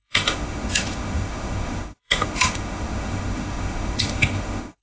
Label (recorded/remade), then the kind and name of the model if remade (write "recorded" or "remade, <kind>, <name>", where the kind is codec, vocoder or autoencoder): remade, autoencoder, DAC-VAE